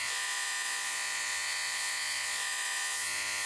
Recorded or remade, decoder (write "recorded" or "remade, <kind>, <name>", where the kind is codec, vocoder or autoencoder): remade, vocoder, Vocos